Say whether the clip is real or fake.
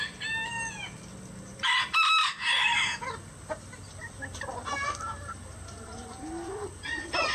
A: real